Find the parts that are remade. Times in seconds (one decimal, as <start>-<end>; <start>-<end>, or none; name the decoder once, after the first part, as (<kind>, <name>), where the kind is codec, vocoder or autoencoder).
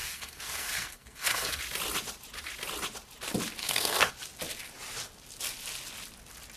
0.0-1.6 (codec, SNAC); 3.6-4.1